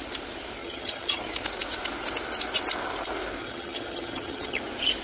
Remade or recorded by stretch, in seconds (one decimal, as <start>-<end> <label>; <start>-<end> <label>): 0.0-0.6 recorded; 0.6-1.2 remade; 1.2-3.4 recorded; 3.4-4.6 remade; 4.6-5.0 recorded